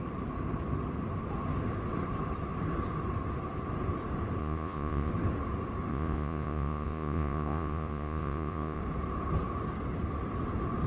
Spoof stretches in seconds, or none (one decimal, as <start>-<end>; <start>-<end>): 4.4-5.1; 5.9-8.8